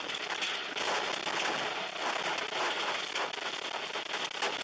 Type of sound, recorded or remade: recorded